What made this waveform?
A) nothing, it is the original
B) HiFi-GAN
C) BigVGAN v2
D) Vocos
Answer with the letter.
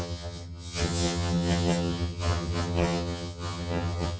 B